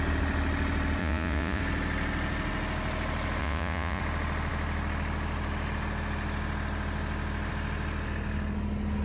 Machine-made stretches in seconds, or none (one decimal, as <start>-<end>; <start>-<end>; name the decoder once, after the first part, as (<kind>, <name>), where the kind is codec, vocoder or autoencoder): 1.0-1.6 (vocoder, Vocos); 3.4-4.0